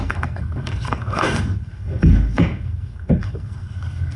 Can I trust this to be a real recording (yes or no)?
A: no